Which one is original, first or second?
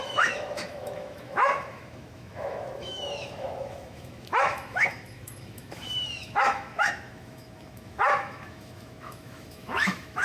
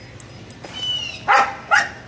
second